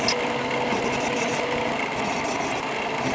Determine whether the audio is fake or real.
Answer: real